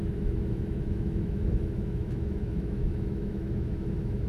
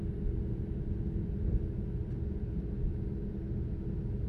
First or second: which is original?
second